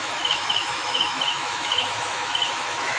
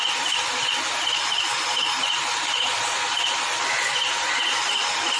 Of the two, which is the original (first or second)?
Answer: second